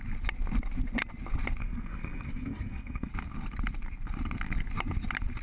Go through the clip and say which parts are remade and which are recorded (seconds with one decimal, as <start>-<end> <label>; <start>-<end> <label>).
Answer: 0.0-1.6 recorded; 1.6-3.1 remade; 3.1-5.4 recorded